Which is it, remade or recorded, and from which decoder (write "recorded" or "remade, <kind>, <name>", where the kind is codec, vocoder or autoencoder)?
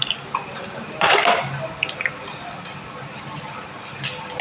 recorded